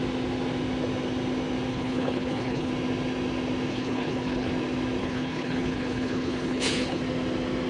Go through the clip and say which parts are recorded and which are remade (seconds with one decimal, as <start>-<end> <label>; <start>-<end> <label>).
0.0-1.7 recorded; 1.7-2.7 remade; 2.7-3.7 recorded; 3.7-4.5 remade; 4.5-5.0 recorded; 5.0-7.0 remade; 7.0-7.7 recorded